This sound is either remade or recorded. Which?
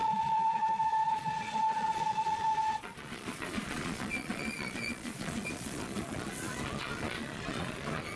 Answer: remade